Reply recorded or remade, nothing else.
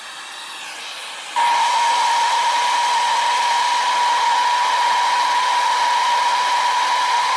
recorded